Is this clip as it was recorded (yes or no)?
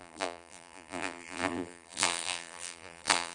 no